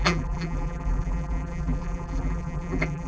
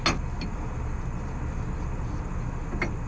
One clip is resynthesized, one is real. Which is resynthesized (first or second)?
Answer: first